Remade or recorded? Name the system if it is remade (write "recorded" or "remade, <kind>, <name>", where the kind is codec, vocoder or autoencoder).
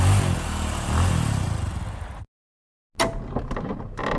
recorded